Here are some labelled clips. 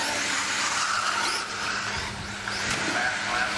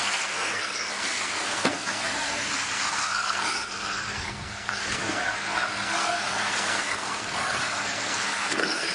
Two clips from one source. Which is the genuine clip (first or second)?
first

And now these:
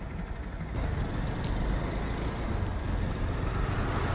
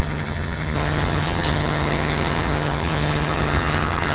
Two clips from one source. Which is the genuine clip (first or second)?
first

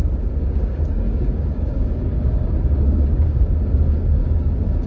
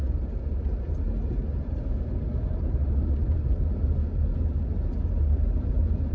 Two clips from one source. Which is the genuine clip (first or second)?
second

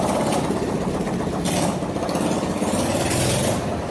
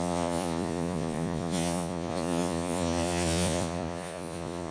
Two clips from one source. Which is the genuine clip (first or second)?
first